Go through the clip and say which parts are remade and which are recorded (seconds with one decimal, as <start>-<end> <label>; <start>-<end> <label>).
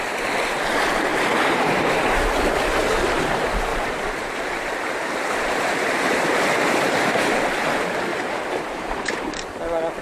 0.0-1.1 recorded; 1.1-2.4 remade; 2.4-3.7 recorded; 3.7-7.4 remade; 7.4-8.1 recorded; 8.1-9.6 remade; 9.6-10.0 recorded